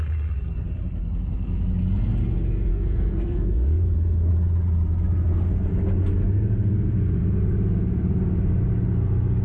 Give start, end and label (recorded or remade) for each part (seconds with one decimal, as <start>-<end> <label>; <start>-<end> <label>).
0.0-2.7 recorded; 2.7-4.3 remade; 4.3-9.4 recorded